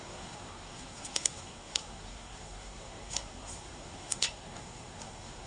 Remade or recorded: remade